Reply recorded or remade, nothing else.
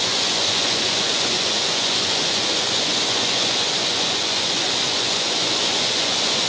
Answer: remade